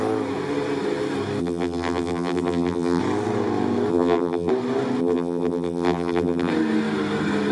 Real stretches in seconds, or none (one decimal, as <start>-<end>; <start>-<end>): 0.0-1.4; 3.0-3.9; 4.5-5.0; 6.5-7.5